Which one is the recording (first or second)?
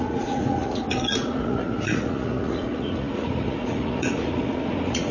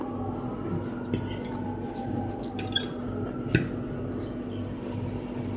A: second